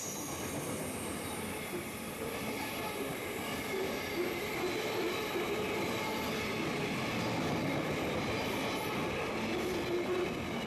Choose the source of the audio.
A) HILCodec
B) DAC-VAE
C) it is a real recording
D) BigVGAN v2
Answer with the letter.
C